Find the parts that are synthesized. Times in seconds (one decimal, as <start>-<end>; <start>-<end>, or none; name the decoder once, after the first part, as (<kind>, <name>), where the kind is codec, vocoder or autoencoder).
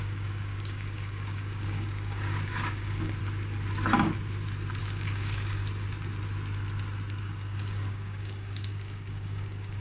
0.0-3.2 (codec, DAC); 4.8-5.6; 7.2-9.8